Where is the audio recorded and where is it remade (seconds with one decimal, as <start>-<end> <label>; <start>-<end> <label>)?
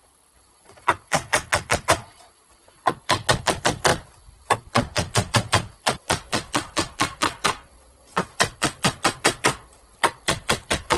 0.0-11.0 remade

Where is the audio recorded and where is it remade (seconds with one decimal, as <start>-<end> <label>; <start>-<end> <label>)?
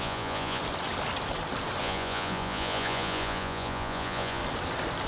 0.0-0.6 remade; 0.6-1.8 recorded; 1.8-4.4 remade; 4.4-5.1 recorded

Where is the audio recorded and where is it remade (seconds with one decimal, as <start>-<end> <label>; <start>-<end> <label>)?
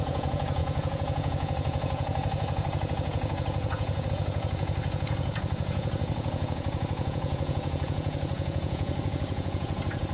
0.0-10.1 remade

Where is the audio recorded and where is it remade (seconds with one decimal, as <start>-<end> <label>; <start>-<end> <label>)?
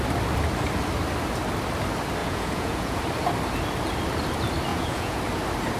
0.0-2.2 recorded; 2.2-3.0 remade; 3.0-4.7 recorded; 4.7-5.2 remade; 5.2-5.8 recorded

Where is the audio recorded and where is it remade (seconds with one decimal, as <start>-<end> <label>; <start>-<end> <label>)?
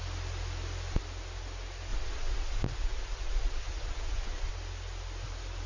0.0-1.9 recorded; 1.9-4.5 remade; 4.5-5.7 recorded